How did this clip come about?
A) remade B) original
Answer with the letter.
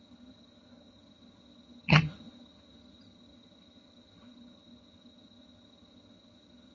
A